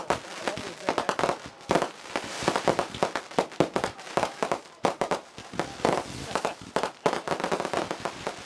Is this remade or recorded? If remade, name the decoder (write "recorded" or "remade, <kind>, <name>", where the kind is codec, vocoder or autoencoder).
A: recorded